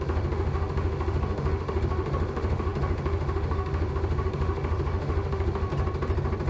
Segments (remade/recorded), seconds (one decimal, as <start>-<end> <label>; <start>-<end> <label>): 0.0-5.7 remade; 5.7-6.5 recorded